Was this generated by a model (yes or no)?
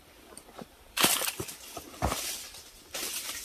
yes